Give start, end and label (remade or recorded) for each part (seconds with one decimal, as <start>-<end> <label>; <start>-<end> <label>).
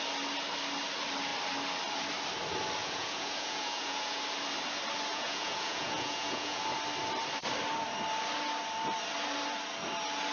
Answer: 0.0-2.8 recorded; 2.8-4.2 remade; 4.2-5.1 recorded; 5.1-6.6 remade; 6.6-10.3 recorded